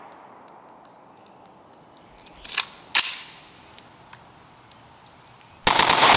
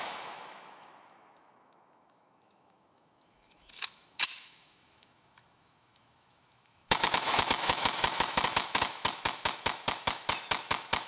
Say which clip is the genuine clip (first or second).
first